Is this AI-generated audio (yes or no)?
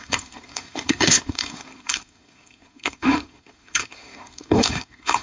yes